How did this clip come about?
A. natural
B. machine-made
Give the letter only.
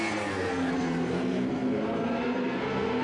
B